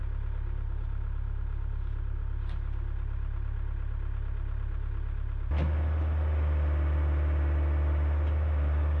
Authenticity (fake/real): real